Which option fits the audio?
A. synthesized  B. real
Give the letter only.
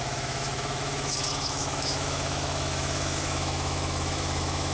A